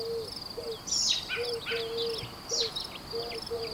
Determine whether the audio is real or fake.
real